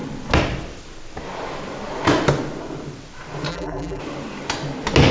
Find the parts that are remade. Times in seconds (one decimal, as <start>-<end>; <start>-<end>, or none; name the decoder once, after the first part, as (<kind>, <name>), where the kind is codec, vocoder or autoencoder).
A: 3.5-4.0 (vocoder, BigVGAN v2)